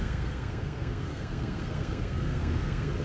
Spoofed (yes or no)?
yes